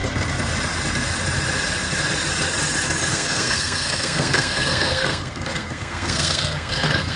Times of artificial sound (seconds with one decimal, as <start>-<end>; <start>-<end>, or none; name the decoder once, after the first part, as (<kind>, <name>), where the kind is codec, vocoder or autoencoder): 3.1-7.2 (codec, SNAC)